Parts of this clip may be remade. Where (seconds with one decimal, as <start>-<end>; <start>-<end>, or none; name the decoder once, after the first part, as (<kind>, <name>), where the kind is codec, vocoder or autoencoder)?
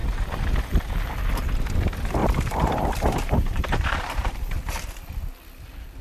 2.2-4.9 (vocoder, BigVGAN v2)